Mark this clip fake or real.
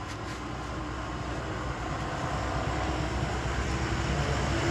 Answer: real